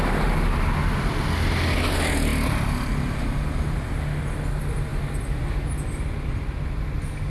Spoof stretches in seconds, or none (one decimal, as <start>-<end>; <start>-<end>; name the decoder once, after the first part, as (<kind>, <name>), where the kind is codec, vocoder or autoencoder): none